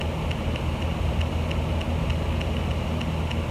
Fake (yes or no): no